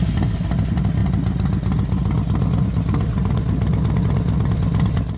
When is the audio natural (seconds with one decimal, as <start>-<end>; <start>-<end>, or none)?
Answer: 0.0-5.2